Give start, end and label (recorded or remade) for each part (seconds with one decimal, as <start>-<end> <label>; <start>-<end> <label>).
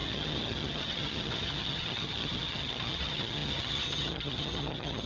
0.0-5.1 remade